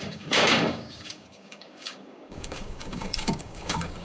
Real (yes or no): no